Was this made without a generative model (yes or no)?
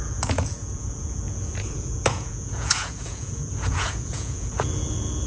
no